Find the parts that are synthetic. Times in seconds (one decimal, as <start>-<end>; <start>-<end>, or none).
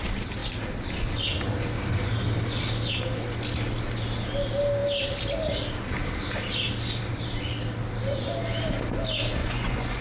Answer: 9.4-10.0